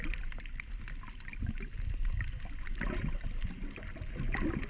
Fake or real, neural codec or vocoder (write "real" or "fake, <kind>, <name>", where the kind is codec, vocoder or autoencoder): real